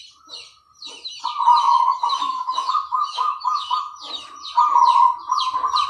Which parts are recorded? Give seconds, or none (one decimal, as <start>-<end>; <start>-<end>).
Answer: 0.0-1.5; 3.8-5.9